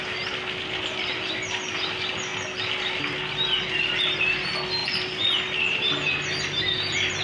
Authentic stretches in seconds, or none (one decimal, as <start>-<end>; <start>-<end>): 0.0-7.2